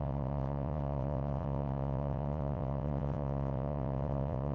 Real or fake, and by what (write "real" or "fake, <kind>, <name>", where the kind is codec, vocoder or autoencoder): fake, vocoder, WaveNeXt